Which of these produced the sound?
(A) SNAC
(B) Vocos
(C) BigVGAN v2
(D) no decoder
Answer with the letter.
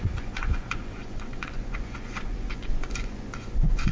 B